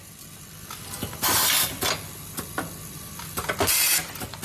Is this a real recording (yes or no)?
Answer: yes